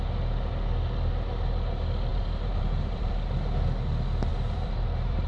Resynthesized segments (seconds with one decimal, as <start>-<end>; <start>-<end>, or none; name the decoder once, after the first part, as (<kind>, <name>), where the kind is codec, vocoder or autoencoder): 2.1-3.1 (vocoder, BigVGAN v2); 4.3-5.3